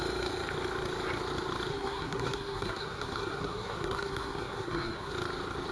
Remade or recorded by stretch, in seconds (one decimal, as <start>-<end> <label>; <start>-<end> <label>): 0.0-1.7 recorded; 1.7-5.1 remade; 5.1-5.7 recorded